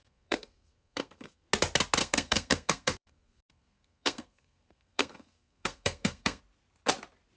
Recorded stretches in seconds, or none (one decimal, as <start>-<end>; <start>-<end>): 1.5-2.0; 6.4-7.4